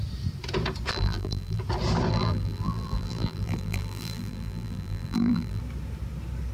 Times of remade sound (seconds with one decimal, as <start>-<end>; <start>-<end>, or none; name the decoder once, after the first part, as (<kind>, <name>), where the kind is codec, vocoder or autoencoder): 0.9-1.6 (vocoder, BigVGAN v2); 2.1-5.6